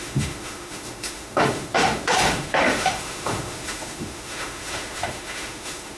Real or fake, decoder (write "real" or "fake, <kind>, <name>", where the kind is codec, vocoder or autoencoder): fake, autoencoder, DAC-VAE